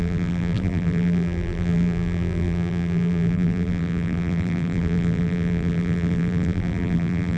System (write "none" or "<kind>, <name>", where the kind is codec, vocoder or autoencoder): vocoder, BigVGAN v2